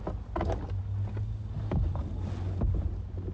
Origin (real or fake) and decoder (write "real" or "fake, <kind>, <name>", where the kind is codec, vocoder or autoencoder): real